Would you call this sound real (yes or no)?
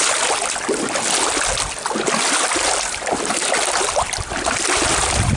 yes